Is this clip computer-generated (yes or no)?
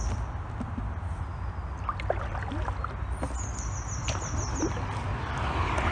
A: no